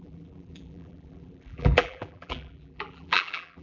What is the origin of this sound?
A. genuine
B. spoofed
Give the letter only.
B